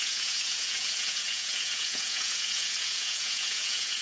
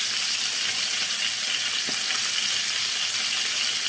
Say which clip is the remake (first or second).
first